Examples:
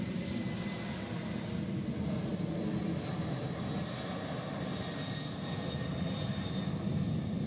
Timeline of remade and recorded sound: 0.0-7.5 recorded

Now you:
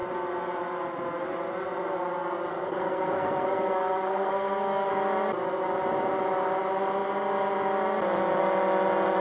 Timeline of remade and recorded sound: 0.0-2.5 recorded; 2.5-4.9 remade; 4.9-9.2 recorded